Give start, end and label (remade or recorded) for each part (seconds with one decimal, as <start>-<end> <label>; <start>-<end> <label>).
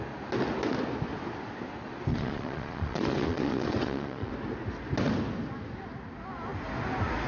0.0-2.1 recorded; 2.1-4.3 remade; 4.3-7.3 recorded